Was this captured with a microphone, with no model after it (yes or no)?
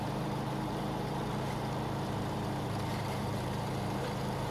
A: no